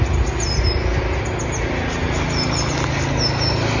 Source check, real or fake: real